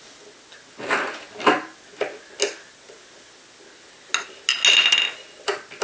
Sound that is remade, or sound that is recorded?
recorded